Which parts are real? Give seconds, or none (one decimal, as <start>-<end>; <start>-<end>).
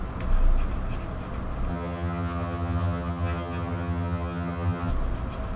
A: 0.0-1.7; 4.9-5.6